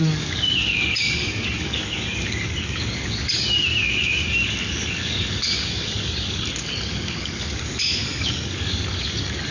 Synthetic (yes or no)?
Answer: yes